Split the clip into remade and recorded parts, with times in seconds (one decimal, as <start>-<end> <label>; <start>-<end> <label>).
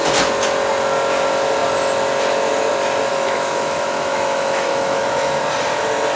0.0-3.1 recorded; 3.1-5.4 remade; 5.4-6.2 recorded